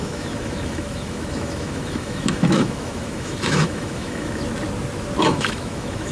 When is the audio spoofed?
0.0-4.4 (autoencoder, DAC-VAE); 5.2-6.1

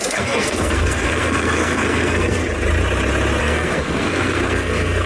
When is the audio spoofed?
0.0-2.4 (codec, SNAC); 3.4-5.1

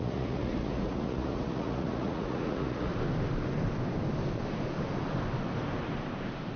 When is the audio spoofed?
0.0-2.9 (vocoder, Vocos)

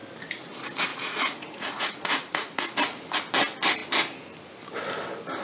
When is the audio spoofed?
0.9-2.8 (vocoder, Vocos)

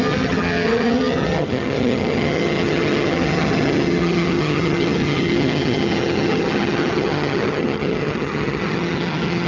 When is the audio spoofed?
0.0-9.5 (vocoder, HiFi-GAN)

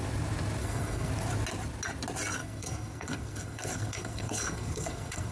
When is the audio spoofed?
0.6-1.1 (codec, SNAC); 2.4-5.3